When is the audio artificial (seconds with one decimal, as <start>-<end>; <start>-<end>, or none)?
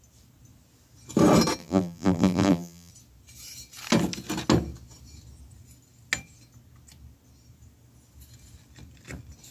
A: 1.6-2.9